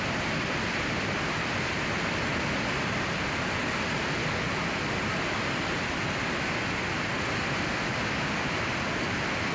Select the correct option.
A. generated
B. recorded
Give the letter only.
B